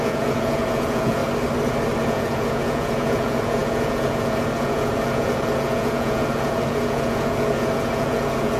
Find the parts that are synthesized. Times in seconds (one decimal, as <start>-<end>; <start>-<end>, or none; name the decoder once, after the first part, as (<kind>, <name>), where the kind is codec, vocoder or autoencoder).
0.0-1.2 (vocoder, Vocos); 2.0-8.6